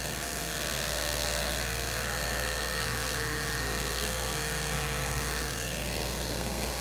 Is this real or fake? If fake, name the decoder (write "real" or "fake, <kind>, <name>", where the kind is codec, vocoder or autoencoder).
fake, codec, SNAC